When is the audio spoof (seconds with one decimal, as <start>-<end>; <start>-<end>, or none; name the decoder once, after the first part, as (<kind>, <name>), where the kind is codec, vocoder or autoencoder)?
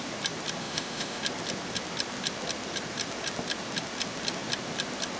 0.6-1.2 (autoencoder, DAC-VAE)